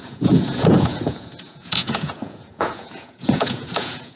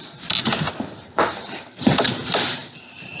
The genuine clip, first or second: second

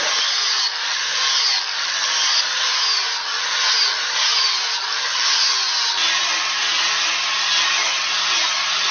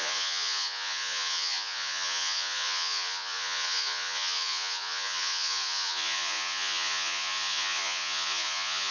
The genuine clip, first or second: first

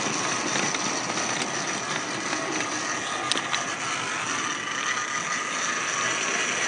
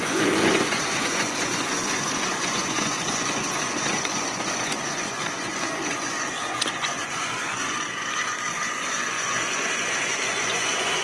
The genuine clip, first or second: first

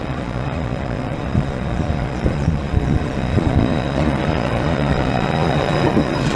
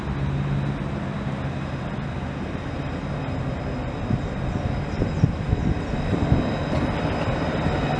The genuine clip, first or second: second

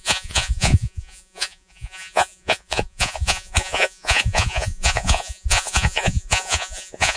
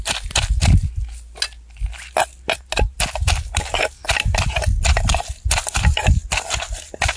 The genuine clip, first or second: second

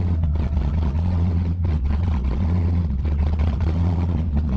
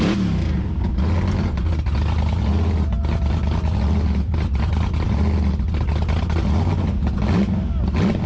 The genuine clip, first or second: second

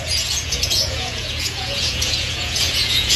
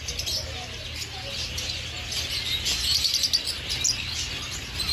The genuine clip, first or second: second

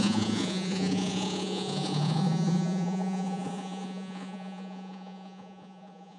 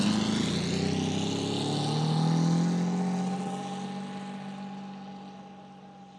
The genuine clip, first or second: second